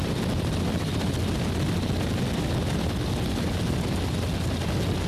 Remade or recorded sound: recorded